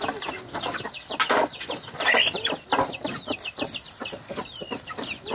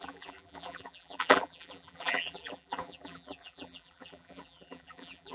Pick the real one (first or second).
first